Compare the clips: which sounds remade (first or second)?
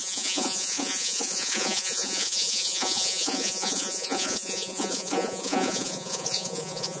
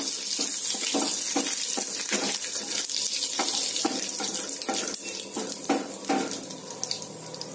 first